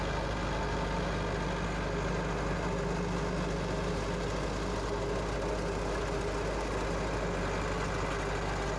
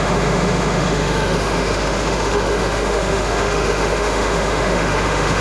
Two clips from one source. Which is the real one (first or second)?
first